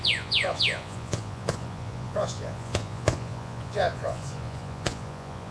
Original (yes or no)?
no